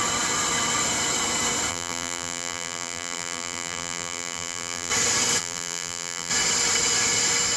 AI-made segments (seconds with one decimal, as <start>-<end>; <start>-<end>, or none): 1.7-4.9; 5.4-6.3